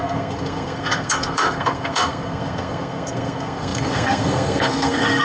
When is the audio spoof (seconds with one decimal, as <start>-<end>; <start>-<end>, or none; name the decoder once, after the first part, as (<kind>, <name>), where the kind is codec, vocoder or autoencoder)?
0.0-5.2 (codec, SNAC)